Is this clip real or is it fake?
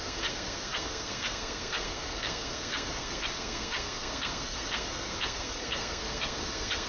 fake